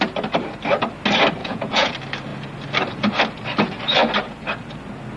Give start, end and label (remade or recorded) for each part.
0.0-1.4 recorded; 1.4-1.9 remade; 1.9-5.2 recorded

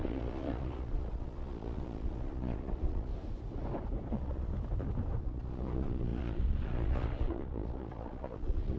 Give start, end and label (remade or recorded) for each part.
0.0-3.1 remade; 3.1-4.1 recorded; 4.1-4.5 remade; 4.5-5.2 recorded; 5.2-8.8 remade

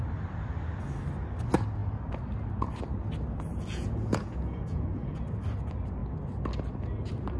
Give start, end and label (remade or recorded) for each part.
0.0-3.5 recorded; 3.5-5.2 remade; 5.2-7.4 recorded

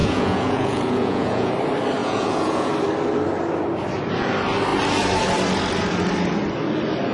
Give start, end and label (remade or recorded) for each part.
0.0-1.5 remade; 1.5-2.0 recorded; 2.0-2.7 remade; 2.7-7.1 recorded

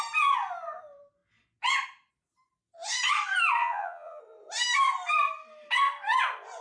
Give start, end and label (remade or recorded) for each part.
0.0-3.6 recorded; 3.6-4.2 remade; 4.2-6.6 recorded